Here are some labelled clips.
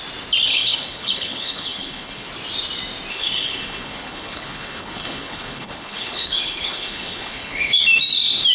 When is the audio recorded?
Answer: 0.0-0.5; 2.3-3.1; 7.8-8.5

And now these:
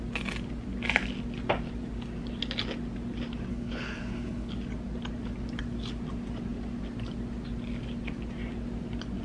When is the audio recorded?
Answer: 0.0-3.5; 4.5-9.2

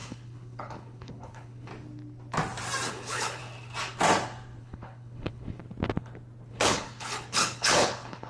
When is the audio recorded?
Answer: 1.7-2.9; 3.4-4.6; 5.6-6.5

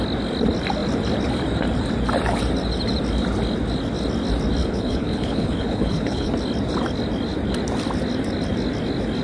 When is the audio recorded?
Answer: 0.0-4.6; 6.3-9.2

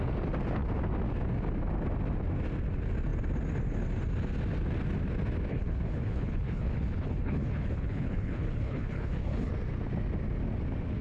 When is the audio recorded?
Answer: 0.0-5.5; 9.5-11.0

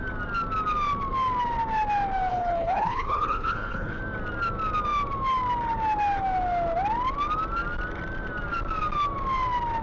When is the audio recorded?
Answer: 0.0-2.3; 4.0-9.8

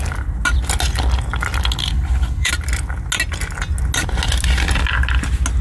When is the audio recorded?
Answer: 0.0-1.8; 2.5-5.6

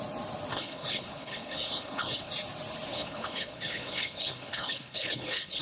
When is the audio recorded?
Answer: 0.0-0.5; 2.3-2.9